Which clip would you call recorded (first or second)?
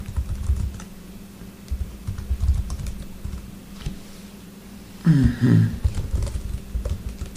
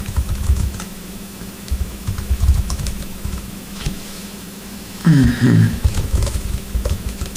first